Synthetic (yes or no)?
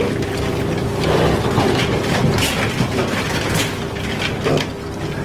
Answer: no